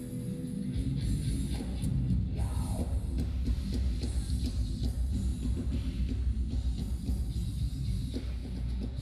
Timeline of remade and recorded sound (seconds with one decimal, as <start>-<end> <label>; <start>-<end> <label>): 0.0-8.4 recorded; 8.4-9.0 remade